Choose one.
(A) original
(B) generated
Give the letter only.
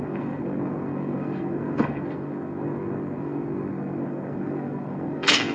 B